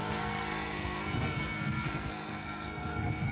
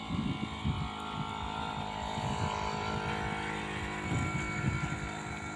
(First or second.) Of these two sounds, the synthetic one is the first